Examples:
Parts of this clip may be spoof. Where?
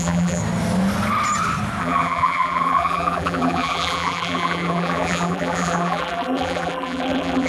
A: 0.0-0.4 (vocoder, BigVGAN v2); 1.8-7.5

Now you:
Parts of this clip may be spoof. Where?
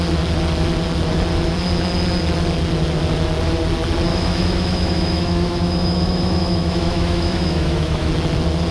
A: 4.1-8.1 (autoencoder, DAC-VAE)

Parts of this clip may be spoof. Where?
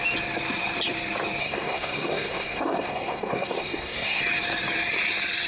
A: 1.4-4.2 (codec, SNAC)